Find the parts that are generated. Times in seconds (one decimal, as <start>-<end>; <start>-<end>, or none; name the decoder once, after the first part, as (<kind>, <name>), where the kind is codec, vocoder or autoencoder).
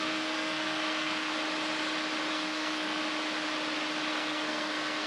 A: 0.0-1.3 (codec, SNAC); 2.3-3.0; 4.1-5.1